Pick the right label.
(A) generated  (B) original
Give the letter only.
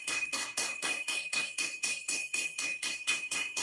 A